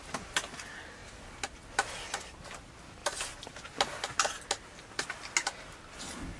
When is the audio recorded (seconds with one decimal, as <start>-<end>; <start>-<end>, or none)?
0.0-6.4